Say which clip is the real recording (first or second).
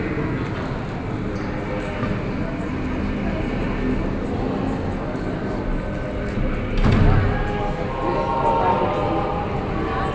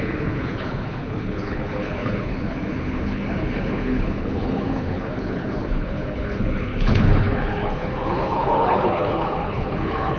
first